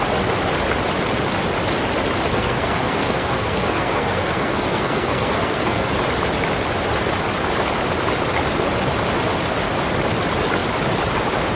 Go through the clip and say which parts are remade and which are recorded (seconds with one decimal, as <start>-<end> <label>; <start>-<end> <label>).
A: 0.0-2.3 recorded; 2.3-5.8 remade; 5.8-11.6 recorded